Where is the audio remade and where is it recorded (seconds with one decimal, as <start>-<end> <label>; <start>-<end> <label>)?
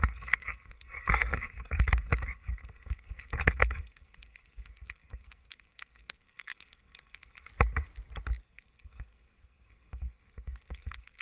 0.0-7.5 remade; 7.5-8.4 recorded; 8.4-11.2 remade